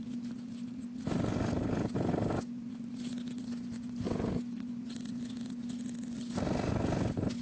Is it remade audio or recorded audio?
recorded